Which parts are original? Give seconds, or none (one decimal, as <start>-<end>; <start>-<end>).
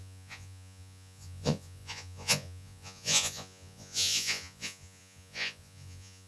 none